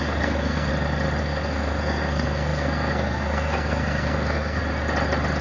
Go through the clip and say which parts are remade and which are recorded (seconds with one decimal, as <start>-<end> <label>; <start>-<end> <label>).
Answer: 0.0-0.7 remade; 0.7-1.2 recorded; 1.2-4.6 remade; 4.6-5.4 recorded